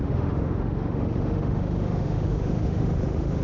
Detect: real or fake fake